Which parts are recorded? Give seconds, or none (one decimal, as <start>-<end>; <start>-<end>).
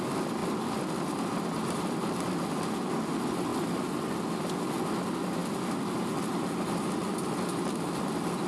0.0-8.5